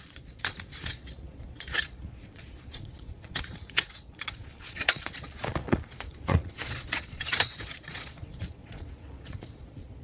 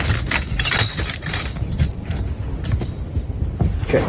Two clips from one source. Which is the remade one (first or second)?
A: first